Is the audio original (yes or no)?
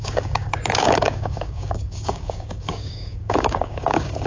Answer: no